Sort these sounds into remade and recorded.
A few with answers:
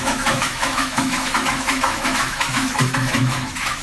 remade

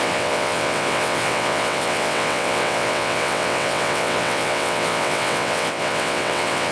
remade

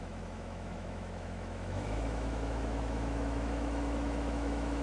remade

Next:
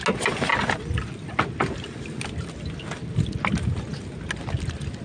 recorded